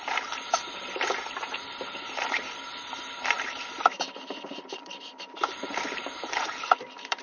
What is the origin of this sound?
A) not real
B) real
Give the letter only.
A